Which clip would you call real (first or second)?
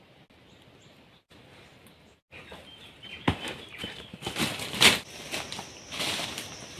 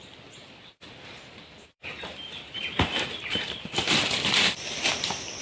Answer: first